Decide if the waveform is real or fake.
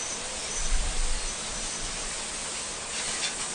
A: real